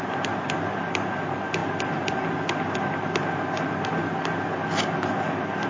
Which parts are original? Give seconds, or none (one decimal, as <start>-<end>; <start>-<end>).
0.0-5.7